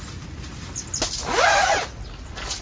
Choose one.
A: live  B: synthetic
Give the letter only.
A